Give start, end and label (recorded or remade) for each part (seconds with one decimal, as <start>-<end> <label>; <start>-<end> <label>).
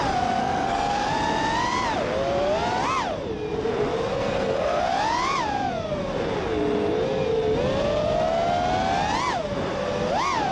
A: 0.0-0.4 recorded; 0.4-1.1 remade; 1.1-4.1 recorded; 4.1-4.8 remade; 4.8-10.5 recorded